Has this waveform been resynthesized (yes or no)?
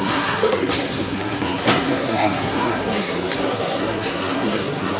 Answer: yes